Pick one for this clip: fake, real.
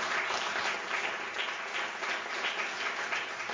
real